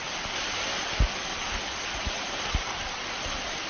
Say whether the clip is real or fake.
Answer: real